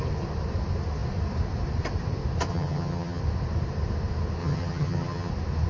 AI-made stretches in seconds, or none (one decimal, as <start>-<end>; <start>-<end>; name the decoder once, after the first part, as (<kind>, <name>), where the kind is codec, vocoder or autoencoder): 2.5-3.2 (vocoder, HiFi-GAN); 4.4-5.3